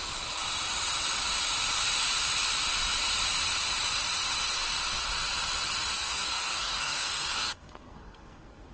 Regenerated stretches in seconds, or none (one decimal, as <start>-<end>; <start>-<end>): 5.9-8.7